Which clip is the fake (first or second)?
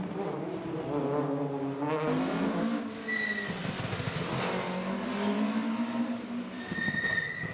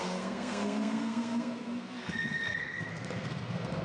second